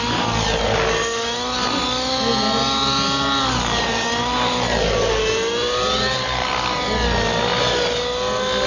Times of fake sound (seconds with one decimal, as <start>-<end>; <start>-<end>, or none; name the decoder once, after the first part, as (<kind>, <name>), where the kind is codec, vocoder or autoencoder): none